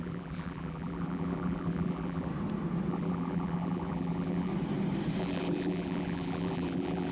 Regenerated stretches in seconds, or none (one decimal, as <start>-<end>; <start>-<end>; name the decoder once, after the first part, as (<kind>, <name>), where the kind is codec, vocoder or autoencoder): 0.0-2.3 (vocoder, BigVGAN v2); 2.9-4.5; 5.2-7.1